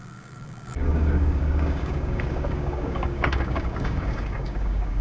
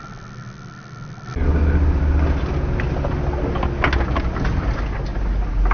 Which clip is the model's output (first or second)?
first